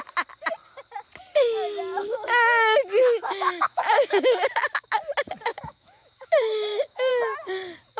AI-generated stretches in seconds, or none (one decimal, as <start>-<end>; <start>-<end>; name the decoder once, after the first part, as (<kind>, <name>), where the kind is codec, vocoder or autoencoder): 2.0-5.0 (autoencoder, DAC-VAE); 5.5-7.1